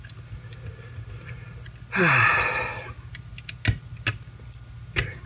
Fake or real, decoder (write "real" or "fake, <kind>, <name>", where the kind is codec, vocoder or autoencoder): real